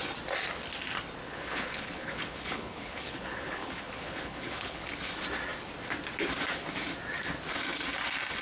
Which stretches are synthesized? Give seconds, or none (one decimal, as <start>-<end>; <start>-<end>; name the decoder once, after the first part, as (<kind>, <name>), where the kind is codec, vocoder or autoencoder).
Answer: 1.2-4.9 (codec, HILCodec)